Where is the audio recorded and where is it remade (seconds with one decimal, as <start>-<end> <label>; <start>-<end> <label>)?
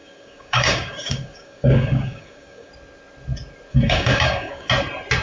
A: 0.0-2.7 remade; 2.7-3.7 recorded; 3.7-4.7 remade; 4.7-5.2 recorded